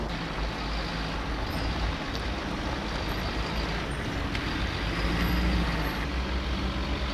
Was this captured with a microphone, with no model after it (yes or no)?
yes